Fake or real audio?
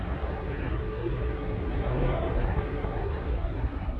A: fake